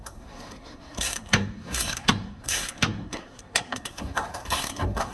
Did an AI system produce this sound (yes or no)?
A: yes